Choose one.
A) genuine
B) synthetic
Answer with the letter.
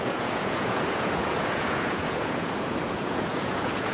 B